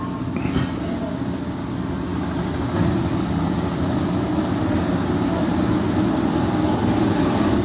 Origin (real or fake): real